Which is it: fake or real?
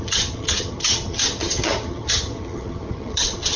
fake